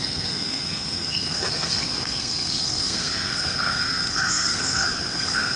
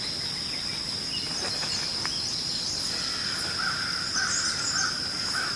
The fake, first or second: first